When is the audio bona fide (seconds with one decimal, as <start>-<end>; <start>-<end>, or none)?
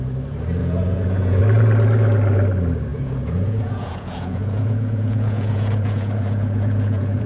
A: 0.0-0.6; 1.4-2.9